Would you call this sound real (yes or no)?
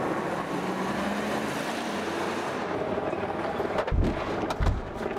yes